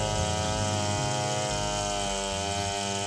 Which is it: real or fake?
real